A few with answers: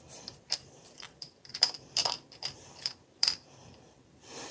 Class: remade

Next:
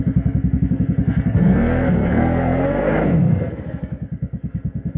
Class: remade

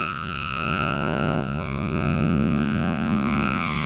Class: remade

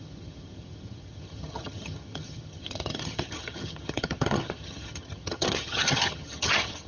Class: remade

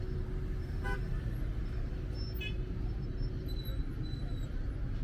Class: recorded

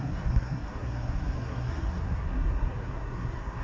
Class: remade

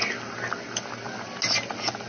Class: recorded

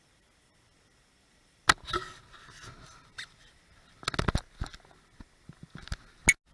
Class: recorded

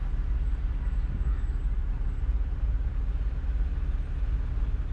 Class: recorded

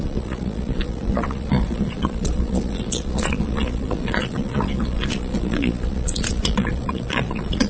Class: remade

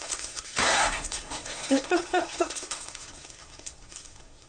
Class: remade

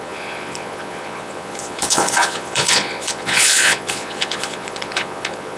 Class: remade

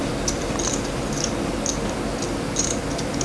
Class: recorded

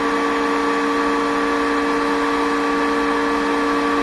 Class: recorded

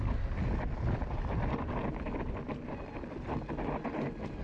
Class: recorded